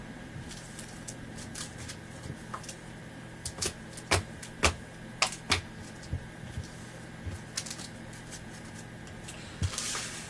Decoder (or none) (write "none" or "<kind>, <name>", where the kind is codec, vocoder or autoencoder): none